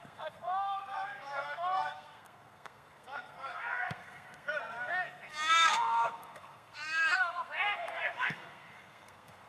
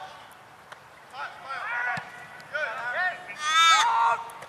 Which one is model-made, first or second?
first